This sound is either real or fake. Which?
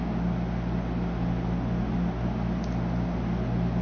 real